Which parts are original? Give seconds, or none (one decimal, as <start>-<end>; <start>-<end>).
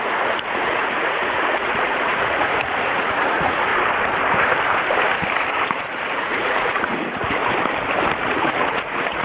3.7-6.0; 7.4-8.1